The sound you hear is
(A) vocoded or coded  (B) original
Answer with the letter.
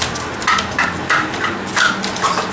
B